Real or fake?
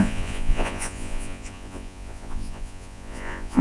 fake